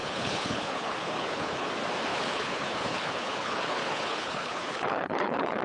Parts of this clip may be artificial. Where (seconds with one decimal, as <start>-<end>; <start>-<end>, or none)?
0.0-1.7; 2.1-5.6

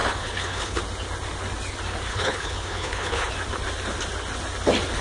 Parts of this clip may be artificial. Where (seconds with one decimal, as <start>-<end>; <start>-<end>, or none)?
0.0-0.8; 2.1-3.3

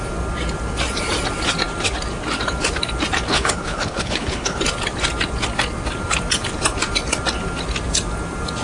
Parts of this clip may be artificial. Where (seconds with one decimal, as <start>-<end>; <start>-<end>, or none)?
3.3-4.6

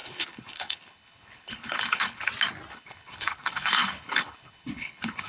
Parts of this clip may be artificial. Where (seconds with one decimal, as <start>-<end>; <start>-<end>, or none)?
0.0-2.3; 2.7-5.3

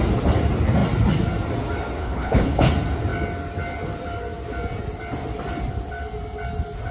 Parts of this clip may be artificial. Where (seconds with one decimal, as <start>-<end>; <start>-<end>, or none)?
2.0-2.7

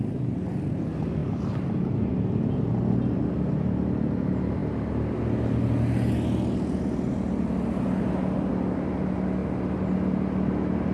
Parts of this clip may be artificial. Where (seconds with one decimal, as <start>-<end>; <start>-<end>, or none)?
none

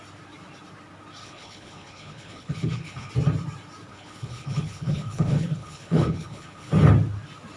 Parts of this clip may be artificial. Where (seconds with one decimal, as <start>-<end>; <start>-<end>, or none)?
1.2-3.1; 3.9-6.7